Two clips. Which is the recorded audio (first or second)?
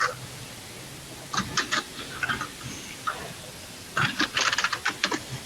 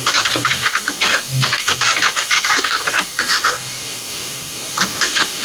first